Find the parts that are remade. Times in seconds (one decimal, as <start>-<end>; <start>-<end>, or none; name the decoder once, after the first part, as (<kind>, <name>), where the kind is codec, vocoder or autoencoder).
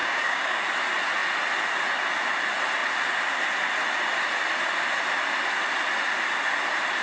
0.0-0.6 (codec, DAC)